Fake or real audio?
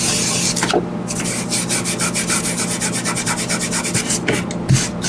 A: real